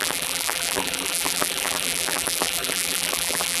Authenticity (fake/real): fake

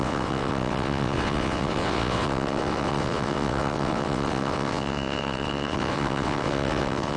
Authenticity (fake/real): fake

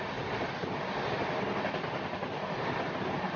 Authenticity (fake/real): real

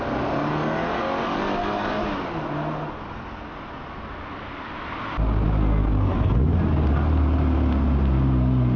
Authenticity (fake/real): real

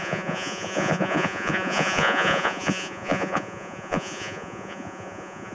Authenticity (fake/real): fake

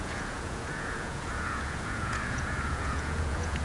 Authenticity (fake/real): fake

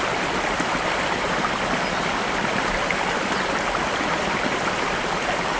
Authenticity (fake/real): real